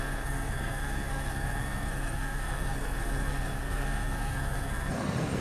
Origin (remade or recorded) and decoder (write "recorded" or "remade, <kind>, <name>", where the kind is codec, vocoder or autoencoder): remade, codec, SNAC